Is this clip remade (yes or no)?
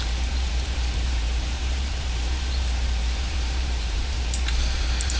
yes